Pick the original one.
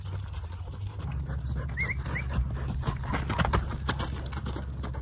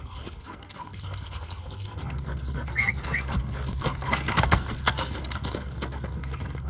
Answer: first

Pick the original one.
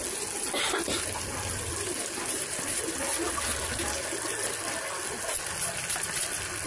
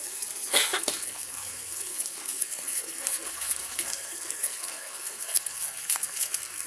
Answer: first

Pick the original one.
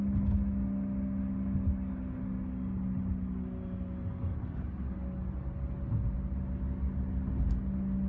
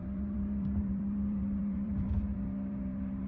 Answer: first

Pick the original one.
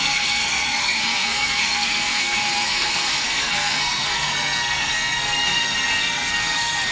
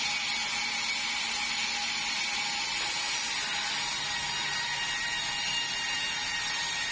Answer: second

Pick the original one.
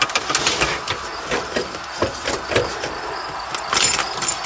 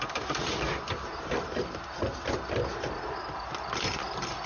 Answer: first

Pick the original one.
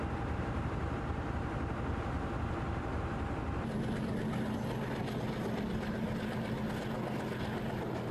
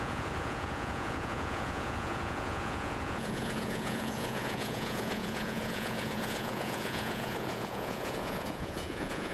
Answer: first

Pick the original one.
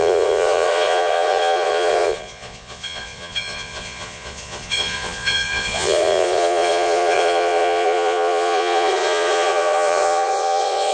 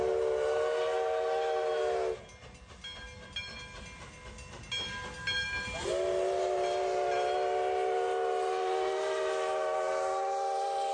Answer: second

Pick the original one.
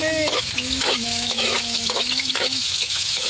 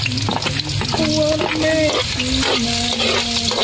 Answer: second